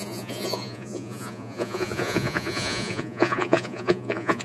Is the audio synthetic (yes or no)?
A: yes